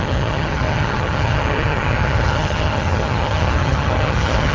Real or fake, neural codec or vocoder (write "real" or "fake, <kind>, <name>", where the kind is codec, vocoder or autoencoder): fake, vocoder, HiFi-GAN